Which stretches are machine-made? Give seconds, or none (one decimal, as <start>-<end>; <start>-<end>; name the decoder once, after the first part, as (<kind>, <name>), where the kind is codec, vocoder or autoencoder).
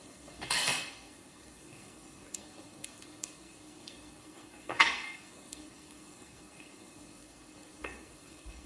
0.0-8.7 (codec, SNAC)